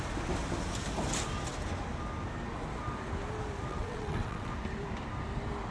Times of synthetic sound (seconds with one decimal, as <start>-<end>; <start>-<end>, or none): 3.7-4.5